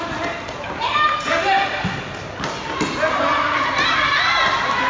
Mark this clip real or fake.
real